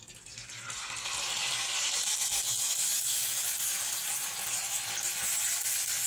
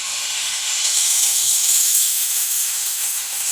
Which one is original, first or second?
first